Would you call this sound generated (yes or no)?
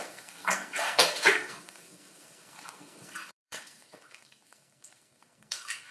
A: yes